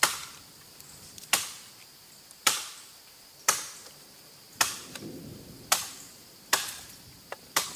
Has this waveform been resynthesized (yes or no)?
yes